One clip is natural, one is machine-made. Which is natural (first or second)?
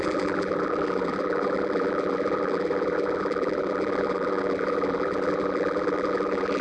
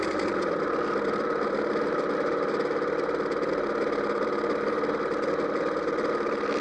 second